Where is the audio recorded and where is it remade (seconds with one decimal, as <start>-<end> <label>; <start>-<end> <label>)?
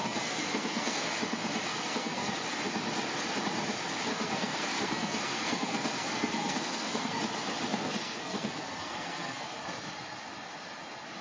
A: 0.0-1.1 remade; 1.1-1.7 recorded; 1.7-2.3 remade; 2.3-4.1 recorded; 4.1-7.2 remade; 7.2-7.7 recorded; 7.7-9.6 remade; 9.6-11.2 recorded